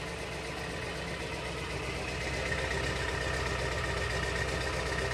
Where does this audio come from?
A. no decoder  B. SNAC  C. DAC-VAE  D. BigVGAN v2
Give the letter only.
A